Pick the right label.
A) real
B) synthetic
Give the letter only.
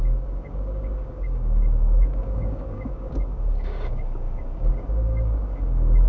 B